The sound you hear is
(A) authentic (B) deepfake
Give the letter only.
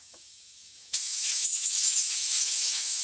B